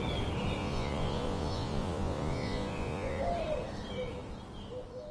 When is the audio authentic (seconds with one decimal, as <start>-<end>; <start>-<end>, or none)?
0.0-0.6; 3.2-5.1